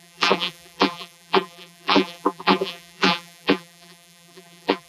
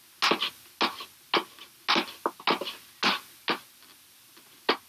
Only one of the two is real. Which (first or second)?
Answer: second